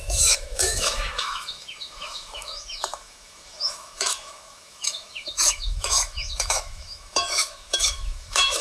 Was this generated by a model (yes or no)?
yes